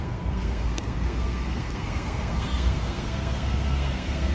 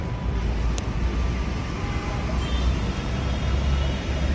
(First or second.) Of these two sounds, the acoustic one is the second